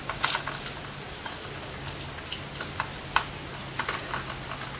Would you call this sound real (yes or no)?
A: yes